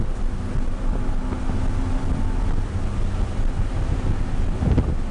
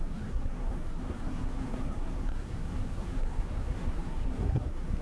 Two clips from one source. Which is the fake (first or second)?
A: second